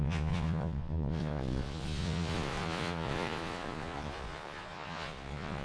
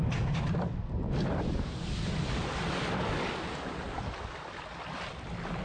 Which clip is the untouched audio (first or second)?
second